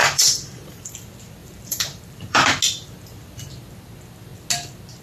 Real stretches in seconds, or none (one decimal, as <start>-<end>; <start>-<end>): 0.9-1.4; 2.6-5.0